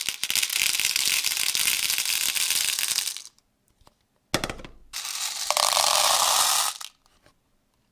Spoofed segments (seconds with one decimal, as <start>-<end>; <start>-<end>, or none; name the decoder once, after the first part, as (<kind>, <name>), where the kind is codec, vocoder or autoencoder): none